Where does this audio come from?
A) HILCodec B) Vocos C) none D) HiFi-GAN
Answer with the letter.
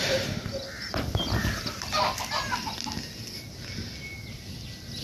C